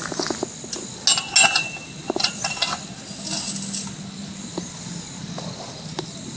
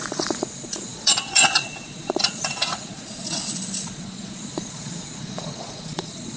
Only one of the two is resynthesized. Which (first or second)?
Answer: second